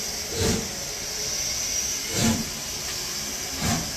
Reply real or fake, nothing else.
real